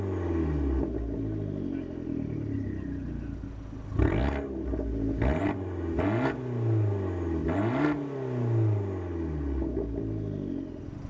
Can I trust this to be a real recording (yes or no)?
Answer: yes